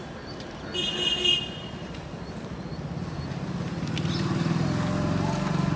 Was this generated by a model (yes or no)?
no